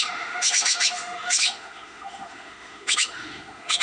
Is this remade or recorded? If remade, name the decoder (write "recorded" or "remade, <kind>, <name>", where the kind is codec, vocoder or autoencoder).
remade, autoencoder, DAC-VAE